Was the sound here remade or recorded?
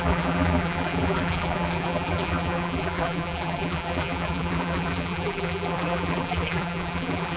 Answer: remade